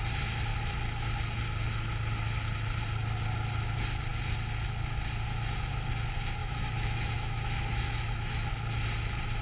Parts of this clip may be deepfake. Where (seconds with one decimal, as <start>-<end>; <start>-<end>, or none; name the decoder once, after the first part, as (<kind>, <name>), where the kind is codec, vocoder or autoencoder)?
6.4-8.5 (autoencoder, DAC-VAE)